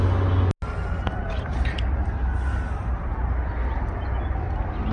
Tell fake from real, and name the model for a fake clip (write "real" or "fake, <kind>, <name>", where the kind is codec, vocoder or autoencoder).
real